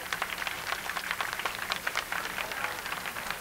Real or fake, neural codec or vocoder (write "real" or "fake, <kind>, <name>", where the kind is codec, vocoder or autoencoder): fake, vocoder, BigVGAN v2